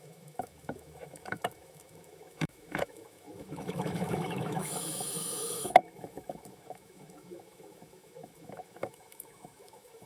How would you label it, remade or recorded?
remade